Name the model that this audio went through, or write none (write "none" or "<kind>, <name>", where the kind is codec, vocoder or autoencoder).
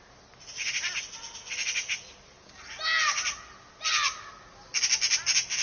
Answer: none